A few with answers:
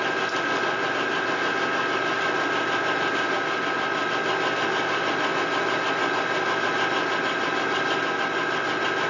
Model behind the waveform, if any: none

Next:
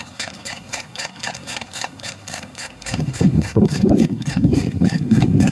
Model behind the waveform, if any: codec, SNAC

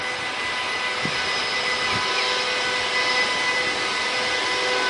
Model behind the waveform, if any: none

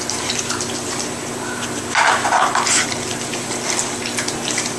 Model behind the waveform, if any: none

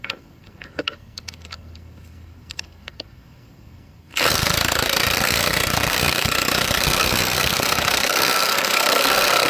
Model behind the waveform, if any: codec, SNAC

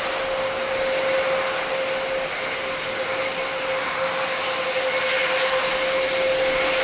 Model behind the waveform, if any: none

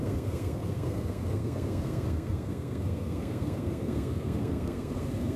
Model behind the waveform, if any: codec, SNAC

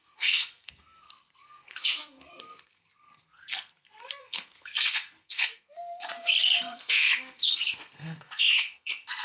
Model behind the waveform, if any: codec, SNAC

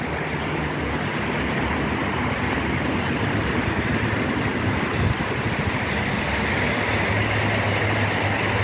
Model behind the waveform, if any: none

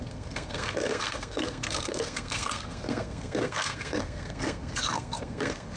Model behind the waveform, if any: codec, SNAC